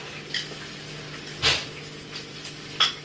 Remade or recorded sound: recorded